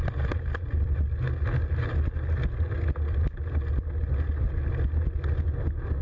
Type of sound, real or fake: real